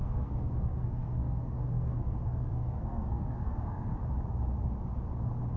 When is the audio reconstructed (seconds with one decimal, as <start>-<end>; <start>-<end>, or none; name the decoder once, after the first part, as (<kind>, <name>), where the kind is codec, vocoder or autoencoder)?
0.0-3.9 (codec, SNAC)